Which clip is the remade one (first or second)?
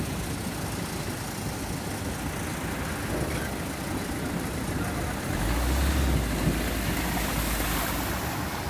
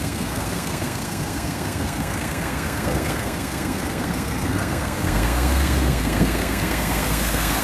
second